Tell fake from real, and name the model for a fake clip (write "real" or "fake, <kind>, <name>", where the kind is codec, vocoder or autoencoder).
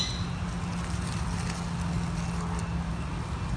real